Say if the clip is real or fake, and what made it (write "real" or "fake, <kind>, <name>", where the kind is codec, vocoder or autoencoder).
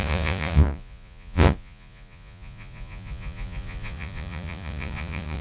fake, vocoder, Vocos